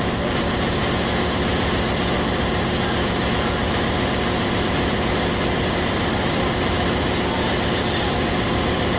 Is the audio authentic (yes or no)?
no